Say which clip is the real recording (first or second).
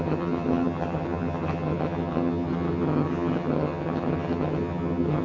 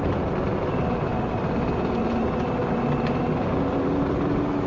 second